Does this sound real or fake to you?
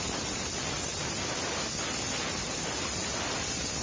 real